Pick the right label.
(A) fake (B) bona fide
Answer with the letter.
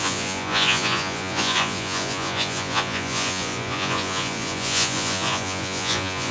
A